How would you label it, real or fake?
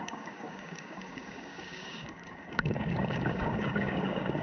fake